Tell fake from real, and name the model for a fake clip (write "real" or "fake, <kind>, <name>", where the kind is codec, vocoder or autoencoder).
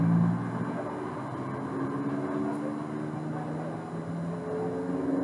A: real